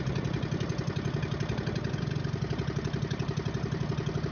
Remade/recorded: recorded